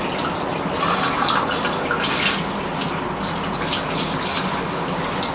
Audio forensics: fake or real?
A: real